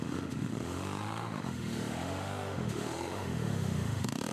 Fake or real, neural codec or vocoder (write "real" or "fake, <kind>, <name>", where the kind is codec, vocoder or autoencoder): fake, autoencoder, DAC-VAE